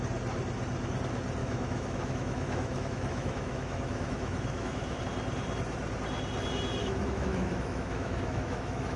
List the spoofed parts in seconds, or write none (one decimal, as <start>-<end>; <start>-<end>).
1.4-5.0; 6.8-9.0